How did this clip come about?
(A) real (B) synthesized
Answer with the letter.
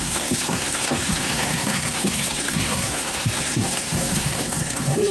B